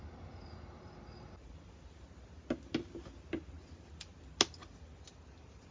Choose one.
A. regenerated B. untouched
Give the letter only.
B